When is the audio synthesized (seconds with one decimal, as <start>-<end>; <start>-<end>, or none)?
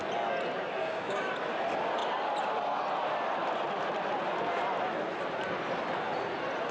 0.8-1.3